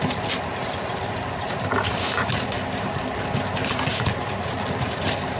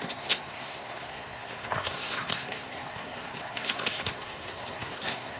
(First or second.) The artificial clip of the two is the second